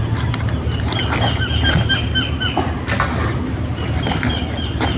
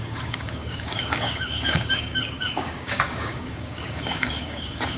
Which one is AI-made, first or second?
second